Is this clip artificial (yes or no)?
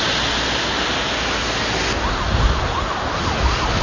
no